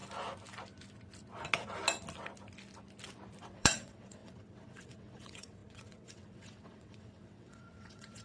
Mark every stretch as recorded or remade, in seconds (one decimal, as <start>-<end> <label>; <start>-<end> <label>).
0.0-3.4 recorded; 3.4-8.2 remade